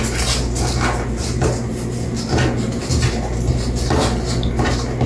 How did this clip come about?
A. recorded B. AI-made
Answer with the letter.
A